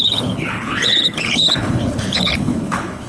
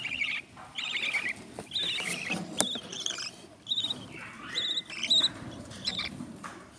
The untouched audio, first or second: second